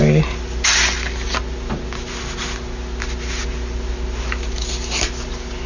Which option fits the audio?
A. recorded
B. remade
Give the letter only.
A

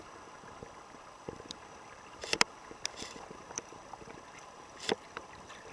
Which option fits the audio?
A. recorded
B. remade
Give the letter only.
B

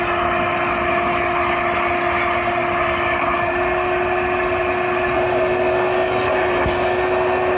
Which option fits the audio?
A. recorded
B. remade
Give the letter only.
A